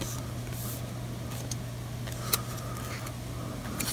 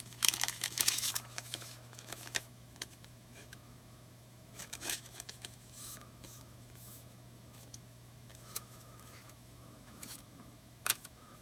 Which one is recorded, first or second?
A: first